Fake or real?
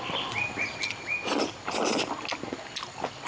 real